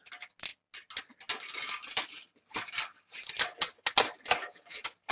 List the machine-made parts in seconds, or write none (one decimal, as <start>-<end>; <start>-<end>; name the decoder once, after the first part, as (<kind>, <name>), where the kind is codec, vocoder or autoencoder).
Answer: none